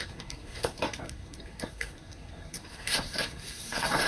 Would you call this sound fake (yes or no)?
yes